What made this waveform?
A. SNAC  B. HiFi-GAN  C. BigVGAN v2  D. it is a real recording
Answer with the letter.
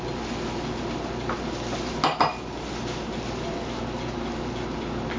D